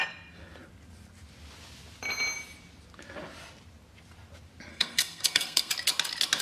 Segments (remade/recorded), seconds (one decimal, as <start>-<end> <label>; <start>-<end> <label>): 0.0-4.7 recorded; 4.7-5.7 remade; 5.7-6.4 recorded